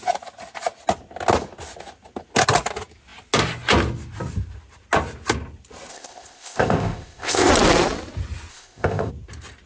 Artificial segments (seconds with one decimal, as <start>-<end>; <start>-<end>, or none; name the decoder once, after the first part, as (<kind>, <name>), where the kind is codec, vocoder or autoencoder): 5.9-7.5 (codec, ZipCodec); 8.5-9.1